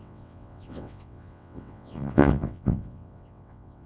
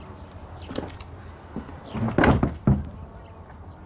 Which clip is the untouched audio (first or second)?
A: second